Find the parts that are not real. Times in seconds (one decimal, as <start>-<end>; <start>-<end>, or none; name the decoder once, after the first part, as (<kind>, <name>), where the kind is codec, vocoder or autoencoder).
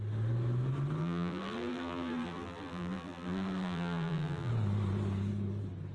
1.0-4.5 (vocoder, BigVGAN v2)